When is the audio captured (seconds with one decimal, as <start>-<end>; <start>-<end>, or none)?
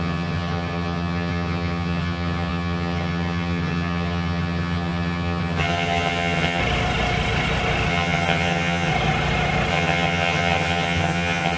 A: 6.6-7.9; 8.9-9.7